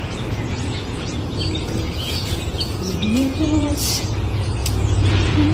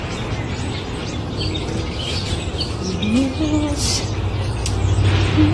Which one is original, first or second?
second